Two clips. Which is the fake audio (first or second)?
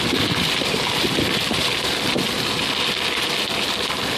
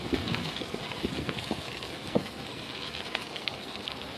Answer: second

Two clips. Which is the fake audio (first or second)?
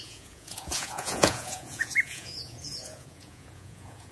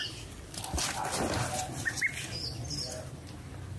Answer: first